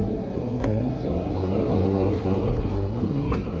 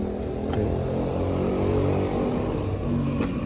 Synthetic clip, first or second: first